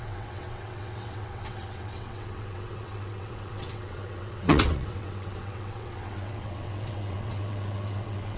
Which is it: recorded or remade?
remade